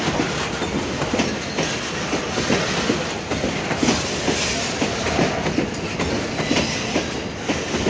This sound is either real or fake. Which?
real